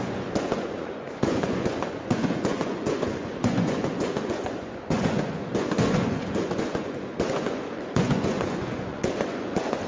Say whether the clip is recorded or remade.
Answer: remade